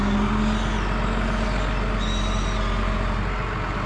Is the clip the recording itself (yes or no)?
yes